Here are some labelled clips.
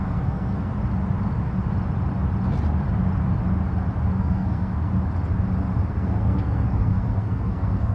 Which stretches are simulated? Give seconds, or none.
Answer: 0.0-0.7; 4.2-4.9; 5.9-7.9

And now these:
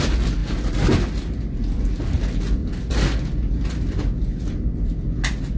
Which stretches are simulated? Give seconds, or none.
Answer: 0.4-1.0; 2.6-3.2

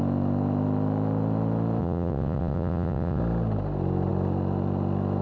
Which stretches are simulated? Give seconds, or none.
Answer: 1.8-3.2

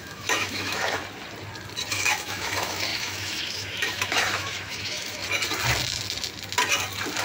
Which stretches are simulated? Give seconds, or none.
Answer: 0.0-1.0; 1.9-5.2